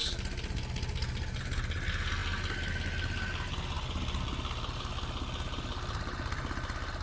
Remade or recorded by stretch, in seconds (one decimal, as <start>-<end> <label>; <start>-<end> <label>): 0.0-7.0 recorded